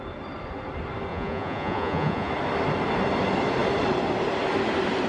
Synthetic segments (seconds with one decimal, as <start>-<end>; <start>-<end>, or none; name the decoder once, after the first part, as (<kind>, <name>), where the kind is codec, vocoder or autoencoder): 1.1-2.3 (vocoder, Vocos)